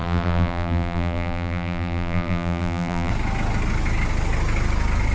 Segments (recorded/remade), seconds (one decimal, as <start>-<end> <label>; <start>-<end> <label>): 0.0-3.1 remade; 3.1-5.1 recorded

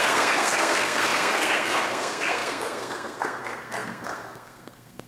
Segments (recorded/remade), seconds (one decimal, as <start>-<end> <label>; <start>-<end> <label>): 0.0-5.1 remade

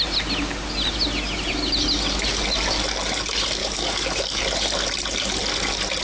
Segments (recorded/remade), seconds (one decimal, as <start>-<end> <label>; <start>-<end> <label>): 0.0-3.6 recorded; 3.6-4.4 remade; 4.4-6.0 recorded

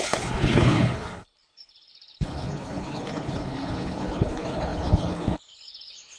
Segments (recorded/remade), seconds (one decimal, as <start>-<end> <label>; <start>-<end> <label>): 0.0-6.2 remade

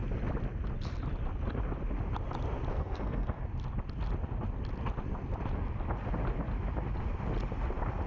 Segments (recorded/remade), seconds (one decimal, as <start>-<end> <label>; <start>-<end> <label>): 0.0-2.7 recorded; 2.7-3.4 remade; 3.4-8.1 recorded

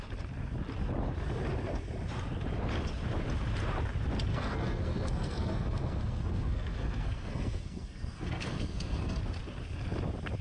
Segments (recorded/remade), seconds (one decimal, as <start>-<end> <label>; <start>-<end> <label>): 0.0-4.3 recorded; 4.3-9.2 remade; 9.2-10.4 recorded